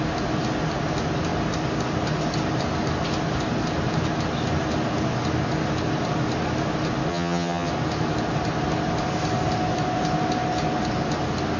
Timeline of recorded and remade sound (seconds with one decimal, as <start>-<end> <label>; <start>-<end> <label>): 0.0-7.1 recorded; 7.1-7.7 remade; 7.7-11.6 recorded